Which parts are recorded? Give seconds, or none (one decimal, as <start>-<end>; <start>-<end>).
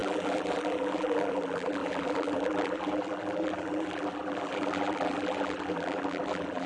none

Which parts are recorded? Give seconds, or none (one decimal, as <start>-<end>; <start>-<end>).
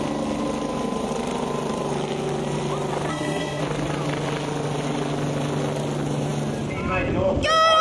0.0-3.1; 3.6-7.8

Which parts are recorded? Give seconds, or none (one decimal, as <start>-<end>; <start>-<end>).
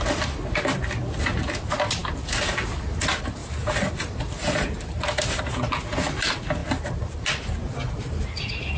0.0-3.4; 5.4-8.8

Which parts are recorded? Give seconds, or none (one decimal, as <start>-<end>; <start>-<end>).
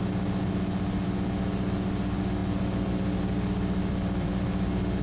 0.0-3.8; 4.3-5.0